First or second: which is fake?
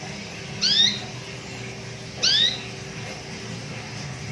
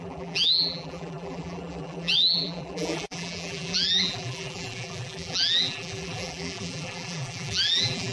second